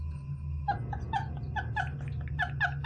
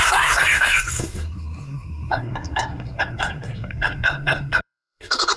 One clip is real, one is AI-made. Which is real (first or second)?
first